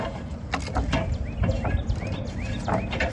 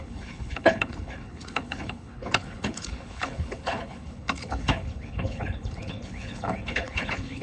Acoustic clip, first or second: first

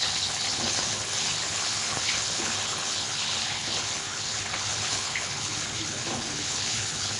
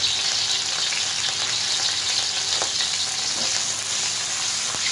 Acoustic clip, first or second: second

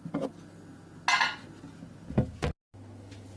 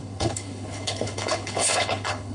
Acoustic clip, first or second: first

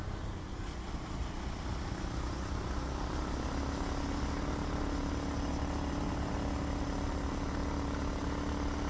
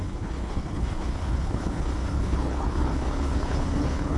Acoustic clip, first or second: first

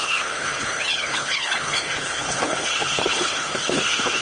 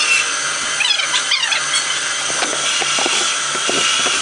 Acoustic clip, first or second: second